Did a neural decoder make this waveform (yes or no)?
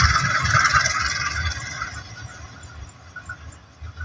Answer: no